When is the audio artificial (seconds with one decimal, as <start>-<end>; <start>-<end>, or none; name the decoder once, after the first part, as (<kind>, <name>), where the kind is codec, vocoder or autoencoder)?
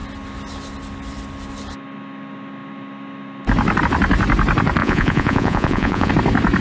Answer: 4.8-6.1 (vocoder, Vocos)